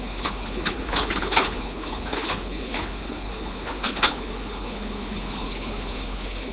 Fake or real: fake